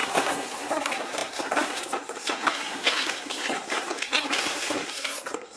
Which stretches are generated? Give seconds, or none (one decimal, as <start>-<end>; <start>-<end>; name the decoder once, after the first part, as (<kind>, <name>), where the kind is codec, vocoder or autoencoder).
0.0-5.6 (codec, SNAC)